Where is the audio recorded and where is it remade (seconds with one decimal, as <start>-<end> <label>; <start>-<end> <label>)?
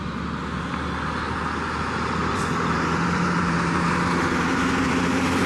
0.0-2.2 recorded; 2.2-5.1 remade; 5.1-5.5 recorded